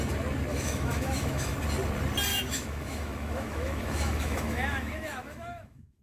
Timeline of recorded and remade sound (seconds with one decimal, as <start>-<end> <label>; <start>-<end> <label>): 0.0-0.5 recorded; 0.5-1.5 remade; 1.5-2.3 recorded; 2.3-6.0 remade